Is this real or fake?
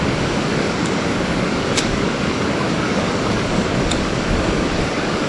fake